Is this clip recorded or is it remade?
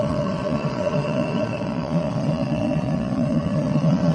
remade